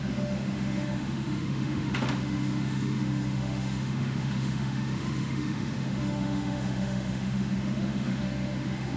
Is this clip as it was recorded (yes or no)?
no